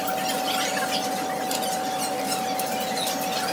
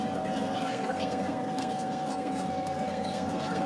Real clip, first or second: first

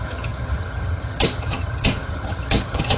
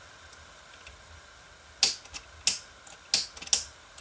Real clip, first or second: second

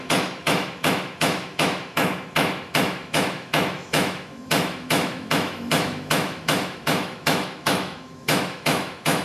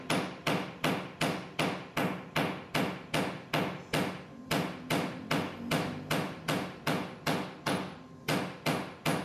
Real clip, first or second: second